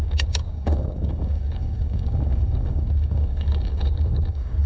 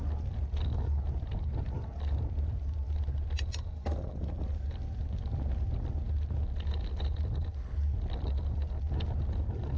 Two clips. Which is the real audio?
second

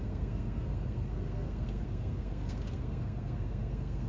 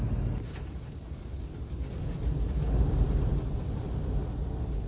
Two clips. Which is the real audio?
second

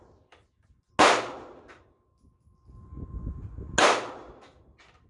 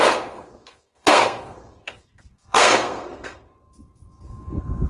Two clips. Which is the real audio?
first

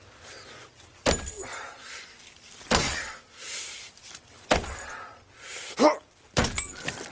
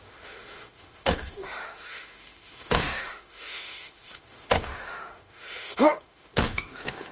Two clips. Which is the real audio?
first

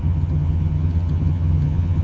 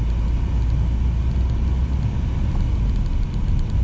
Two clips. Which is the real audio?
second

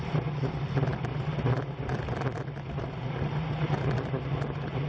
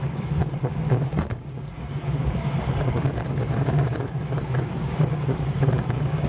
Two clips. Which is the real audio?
first